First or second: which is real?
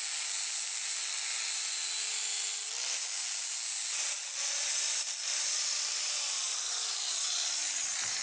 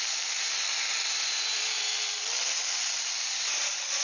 first